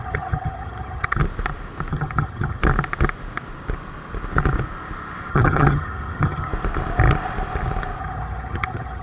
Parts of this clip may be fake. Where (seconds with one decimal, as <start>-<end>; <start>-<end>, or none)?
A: 0.0-1.2; 1.9-2.6; 5.3-6.5; 8.0-9.0